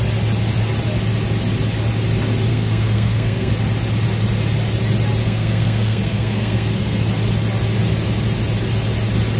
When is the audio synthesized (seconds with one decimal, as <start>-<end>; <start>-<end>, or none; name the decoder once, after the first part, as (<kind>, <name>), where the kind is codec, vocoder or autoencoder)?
2.5-3.5 (codec, SNAC); 5.2-7.1